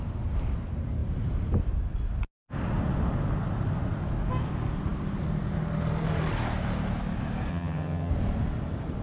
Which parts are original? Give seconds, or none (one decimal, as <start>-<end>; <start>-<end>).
0.0-7.5; 8.1-9.0